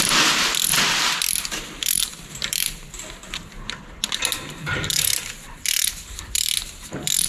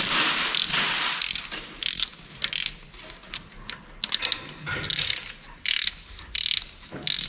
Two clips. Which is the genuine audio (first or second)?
second